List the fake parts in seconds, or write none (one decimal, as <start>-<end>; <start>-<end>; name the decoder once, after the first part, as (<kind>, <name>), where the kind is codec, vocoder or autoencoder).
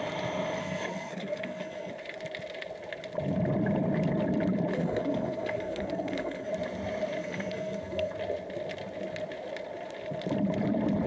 0.6-1.9 (codec, SNAC); 4.7-6.5; 7.2-8.1